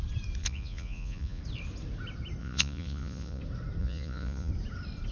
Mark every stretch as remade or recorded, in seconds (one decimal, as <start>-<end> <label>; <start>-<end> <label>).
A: 0.0-0.4 recorded; 0.4-1.4 remade; 1.4-2.4 recorded; 2.4-3.4 remade; 3.4-3.8 recorded; 3.8-4.5 remade; 4.5-5.1 recorded